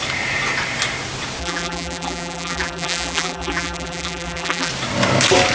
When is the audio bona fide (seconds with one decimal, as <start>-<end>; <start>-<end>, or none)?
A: 0.0-1.4; 4.7-5.5